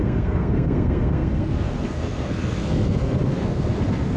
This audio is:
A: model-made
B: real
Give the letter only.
A